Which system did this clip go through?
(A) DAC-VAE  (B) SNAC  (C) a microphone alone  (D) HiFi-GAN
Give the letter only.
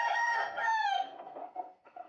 B